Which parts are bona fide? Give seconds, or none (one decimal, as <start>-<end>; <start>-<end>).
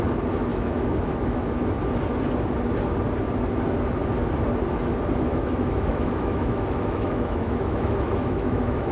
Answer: 0.0-0.5; 1.6-5.3